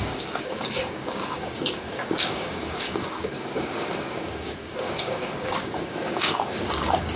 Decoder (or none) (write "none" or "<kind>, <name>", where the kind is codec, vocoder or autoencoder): codec, DAC